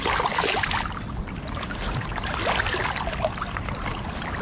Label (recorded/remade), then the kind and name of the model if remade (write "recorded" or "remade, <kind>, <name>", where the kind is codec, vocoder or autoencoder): recorded